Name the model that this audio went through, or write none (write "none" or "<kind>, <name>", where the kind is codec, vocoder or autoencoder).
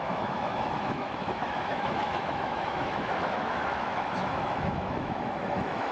autoencoder, DAC-VAE